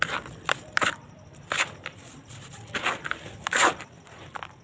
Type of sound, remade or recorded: recorded